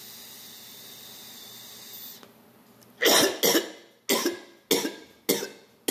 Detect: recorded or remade recorded